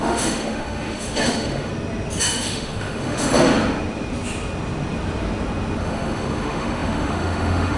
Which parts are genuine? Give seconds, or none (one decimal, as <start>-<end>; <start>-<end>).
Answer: 1.7-2.2; 3.3-5.8